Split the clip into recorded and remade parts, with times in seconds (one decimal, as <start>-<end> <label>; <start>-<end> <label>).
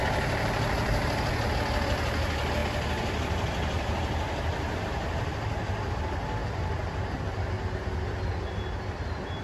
0.0-1.3 remade; 1.3-6.4 recorded; 6.4-7.2 remade; 7.2-9.4 recorded